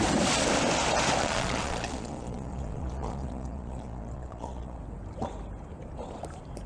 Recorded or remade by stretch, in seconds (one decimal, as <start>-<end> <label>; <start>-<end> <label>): 0.0-1.2 recorded; 1.2-4.8 remade; 4.8-6.7 recorded